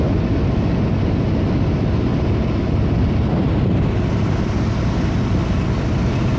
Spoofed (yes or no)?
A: no